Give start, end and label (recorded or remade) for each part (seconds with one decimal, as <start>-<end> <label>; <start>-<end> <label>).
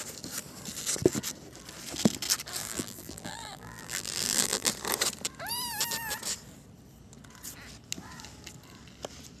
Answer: 0.0-2.6 recorded; 2.6-4.7 remade; 4.7-9.4 recorded